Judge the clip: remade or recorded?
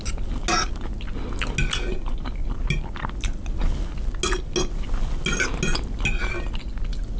recorded